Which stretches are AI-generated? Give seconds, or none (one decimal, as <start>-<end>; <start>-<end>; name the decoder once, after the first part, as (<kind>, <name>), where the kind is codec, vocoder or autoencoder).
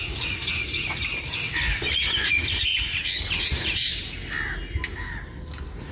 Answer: 0.0-1.1 (vocoder, Vocos); 1.9-2.7; 3.4-3.9